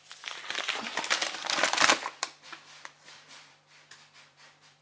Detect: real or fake fake